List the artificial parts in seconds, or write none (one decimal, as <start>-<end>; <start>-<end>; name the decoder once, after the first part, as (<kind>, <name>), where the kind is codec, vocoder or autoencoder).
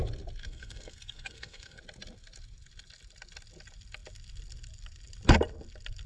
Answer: 0.4-1.8 (codec, SNAC)